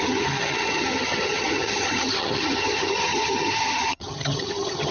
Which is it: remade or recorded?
remade